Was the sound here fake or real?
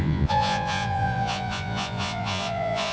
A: fake